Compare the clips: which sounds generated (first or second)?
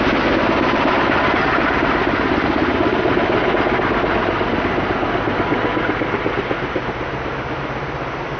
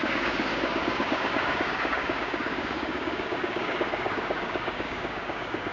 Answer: second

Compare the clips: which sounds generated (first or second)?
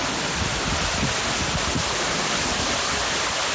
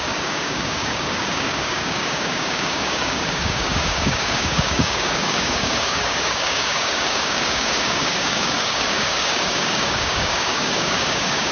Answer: second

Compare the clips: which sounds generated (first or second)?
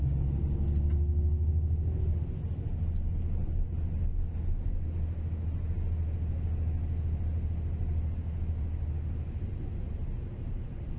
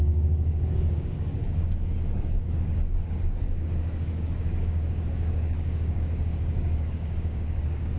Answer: second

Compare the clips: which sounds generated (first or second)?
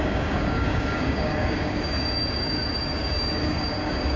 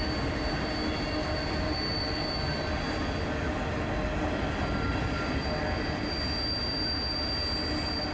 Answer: first